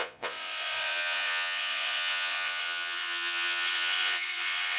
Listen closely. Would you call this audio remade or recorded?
remade